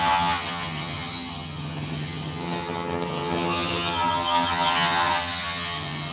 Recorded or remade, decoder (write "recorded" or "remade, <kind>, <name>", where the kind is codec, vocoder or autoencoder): remade, vocoder, HiFi-GAN